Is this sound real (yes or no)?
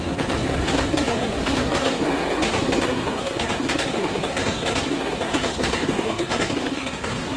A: no